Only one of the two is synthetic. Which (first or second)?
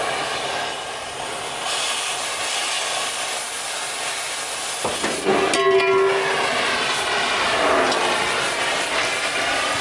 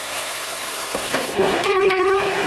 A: second